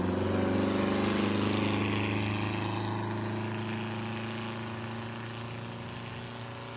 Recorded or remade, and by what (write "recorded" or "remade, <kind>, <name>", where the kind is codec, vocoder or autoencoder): recorded